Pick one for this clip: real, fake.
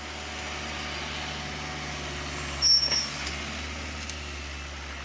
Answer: real